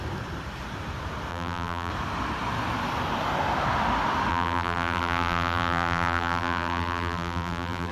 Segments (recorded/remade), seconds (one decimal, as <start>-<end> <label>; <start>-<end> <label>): 0.0-1.3 recorded; 1.3-1.9 remade; 1.9-4.3 recorded; 4.3-7.9 remade